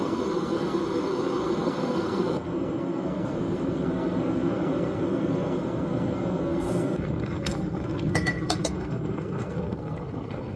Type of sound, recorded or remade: remade